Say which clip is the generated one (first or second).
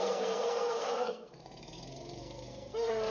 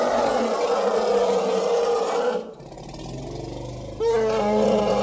first